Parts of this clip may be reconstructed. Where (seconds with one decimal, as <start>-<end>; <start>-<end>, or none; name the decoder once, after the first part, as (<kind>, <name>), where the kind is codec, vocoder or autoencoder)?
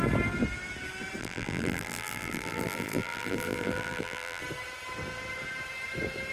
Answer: 1.2-4.4 (vocoder, BigVGAN v2)